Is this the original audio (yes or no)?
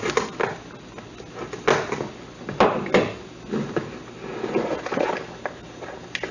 yes